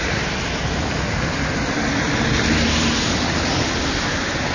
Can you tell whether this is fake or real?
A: real